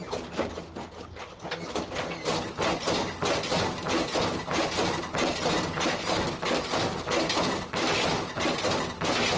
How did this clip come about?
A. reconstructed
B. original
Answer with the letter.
B